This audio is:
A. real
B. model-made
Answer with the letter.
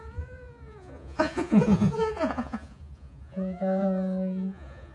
B